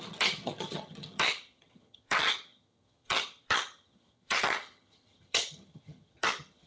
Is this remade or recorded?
remade